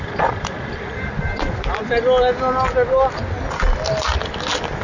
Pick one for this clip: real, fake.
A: real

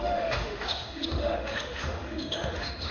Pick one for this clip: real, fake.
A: fake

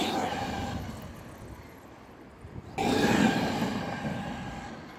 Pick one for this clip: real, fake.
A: real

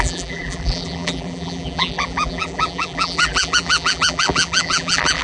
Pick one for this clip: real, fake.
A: fake